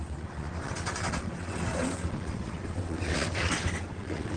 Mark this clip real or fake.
fake